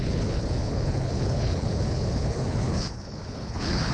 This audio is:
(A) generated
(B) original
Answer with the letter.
A